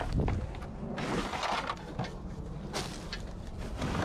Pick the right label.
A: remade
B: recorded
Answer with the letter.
B